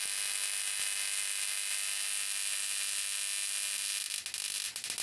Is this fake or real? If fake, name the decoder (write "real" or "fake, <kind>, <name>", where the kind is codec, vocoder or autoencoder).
real